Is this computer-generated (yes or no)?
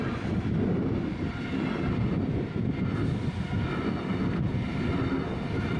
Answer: no